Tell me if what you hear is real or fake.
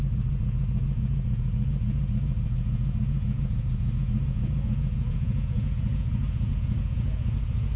fake